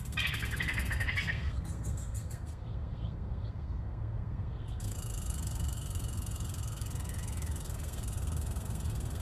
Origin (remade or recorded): remade